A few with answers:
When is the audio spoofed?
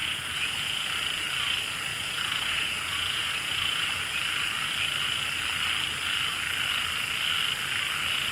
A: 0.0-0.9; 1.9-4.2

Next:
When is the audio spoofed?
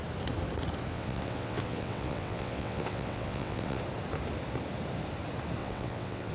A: 0.9-3.8; 5.6-6.3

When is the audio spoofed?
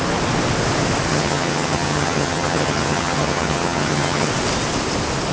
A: 1.1-4.3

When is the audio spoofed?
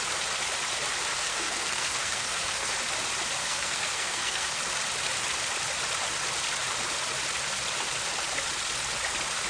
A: 1.1-2.7; 3.4-4.6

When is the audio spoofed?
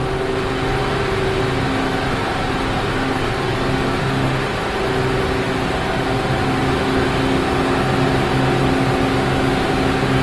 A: 4.0-4.5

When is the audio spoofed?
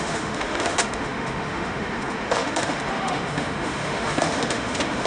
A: 0.0-5.1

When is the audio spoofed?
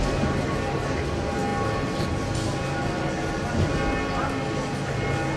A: none